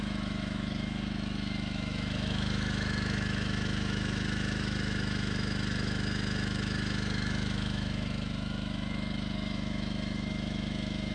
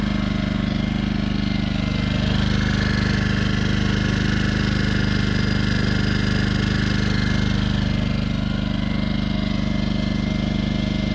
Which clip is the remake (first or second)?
first